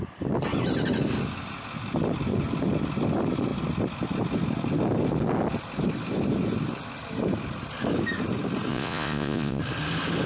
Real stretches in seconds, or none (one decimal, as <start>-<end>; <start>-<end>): 0.0-8.7; 9.6-10.3